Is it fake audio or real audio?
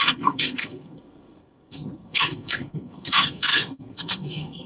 fake